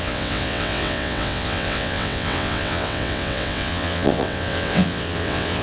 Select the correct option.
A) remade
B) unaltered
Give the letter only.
A